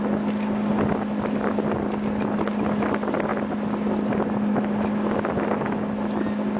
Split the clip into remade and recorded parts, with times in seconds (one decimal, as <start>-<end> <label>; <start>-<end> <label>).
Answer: 0.0-6.6 recorded